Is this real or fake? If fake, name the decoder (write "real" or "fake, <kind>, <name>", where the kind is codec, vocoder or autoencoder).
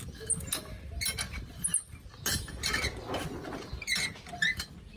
real